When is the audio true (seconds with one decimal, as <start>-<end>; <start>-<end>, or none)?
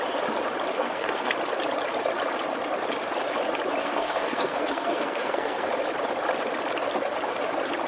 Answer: 0.0-0.7; 1.3-3.8; 5.7-7.9